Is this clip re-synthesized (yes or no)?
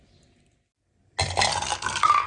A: no